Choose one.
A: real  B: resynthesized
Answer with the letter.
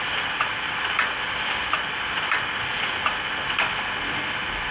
B